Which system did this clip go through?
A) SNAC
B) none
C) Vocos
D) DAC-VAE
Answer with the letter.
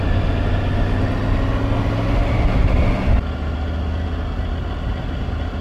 B